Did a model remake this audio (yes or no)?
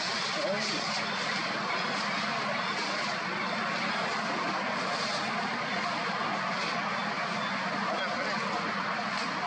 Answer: no